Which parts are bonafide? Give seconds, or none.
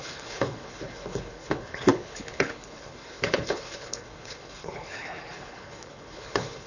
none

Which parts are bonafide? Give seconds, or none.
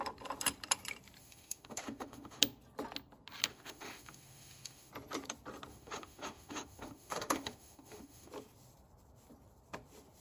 0.0-1.2; 2.4-3.5; 4.9-5.7; 8.3-10.2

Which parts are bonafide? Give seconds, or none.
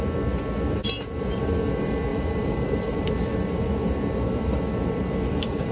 0.0-2.1; 3.1-5.7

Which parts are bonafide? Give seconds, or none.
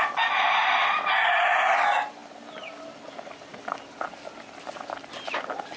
0.0-5.8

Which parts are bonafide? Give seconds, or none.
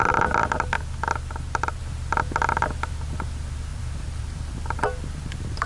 0.0-3.7; 4.8-5.7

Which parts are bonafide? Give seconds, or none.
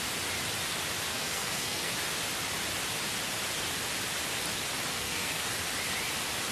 0.0-1.1; 1.9-4.9; 5.4-6.5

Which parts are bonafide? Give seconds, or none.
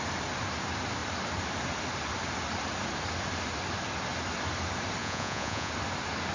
0.0-5.0; 5.7-6.3